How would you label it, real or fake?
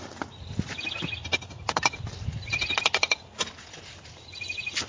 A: real